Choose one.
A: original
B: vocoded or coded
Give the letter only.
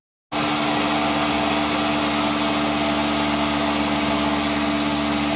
A